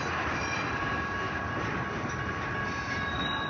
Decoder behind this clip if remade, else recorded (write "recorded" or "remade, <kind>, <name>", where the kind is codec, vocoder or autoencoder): recorded